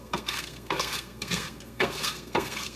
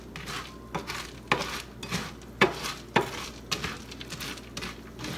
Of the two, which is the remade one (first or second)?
first